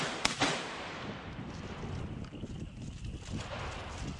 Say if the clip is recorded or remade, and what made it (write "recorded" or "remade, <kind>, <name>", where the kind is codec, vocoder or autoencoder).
recorded